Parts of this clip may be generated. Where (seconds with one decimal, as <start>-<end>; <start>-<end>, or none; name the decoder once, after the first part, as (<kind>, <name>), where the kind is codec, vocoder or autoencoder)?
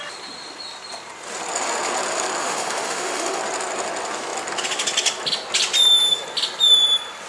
2.4-3.4 (autoencoder, DAC-VAE)